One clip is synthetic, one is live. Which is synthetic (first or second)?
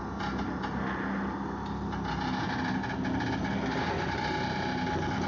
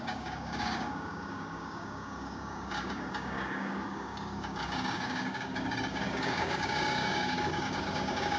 second